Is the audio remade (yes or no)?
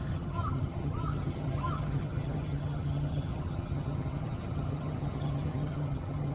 yes